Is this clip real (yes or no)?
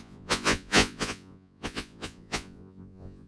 no